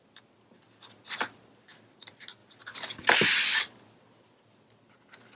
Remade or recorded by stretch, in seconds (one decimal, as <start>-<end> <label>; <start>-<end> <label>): 0.0-5.3 recorded